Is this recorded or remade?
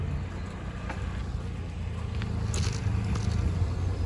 recorded